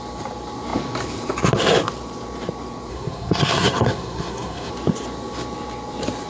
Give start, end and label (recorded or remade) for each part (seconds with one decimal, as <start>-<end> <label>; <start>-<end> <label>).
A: 0.0-2.9 recorded; 2.9-4.7 remade; 4.7-6.3 recorded